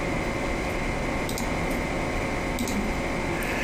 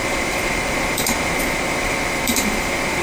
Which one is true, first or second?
first